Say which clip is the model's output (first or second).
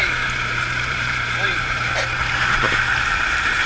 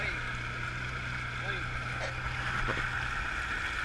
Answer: first